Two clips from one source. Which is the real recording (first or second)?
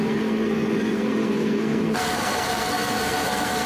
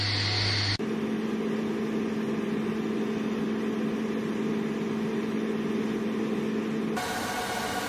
second